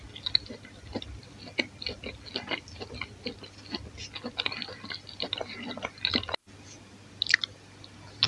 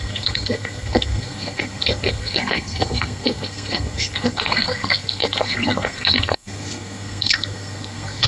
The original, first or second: first